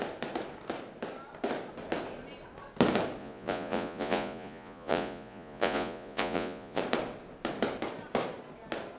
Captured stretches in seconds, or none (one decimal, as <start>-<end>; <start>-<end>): 0.0-3.2; 6.8-9.0